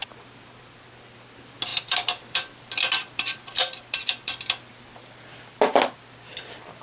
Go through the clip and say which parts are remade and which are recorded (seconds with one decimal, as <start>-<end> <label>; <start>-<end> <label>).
0.0-1.7 recorded; 1.7-5.3 remade; 5.3-6.8 recorded